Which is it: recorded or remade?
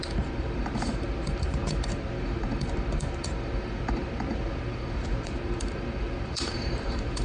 remade